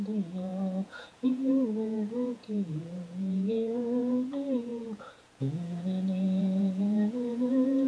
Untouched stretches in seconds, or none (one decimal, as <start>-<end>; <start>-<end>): none